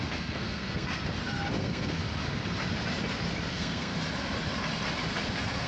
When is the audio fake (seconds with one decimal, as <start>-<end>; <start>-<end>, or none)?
0.0-0.9; 1.5-2.0; 3.5-3.9; 5.3-5.7